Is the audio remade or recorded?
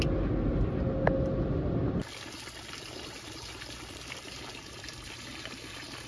recorded